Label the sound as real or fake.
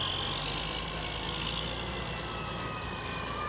real